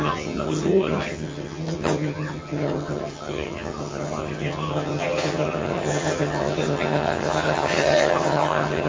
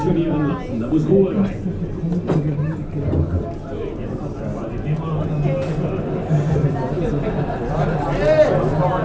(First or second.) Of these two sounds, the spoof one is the first